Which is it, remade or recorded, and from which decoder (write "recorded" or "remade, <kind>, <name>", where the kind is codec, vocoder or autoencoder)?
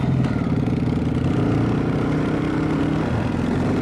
recorded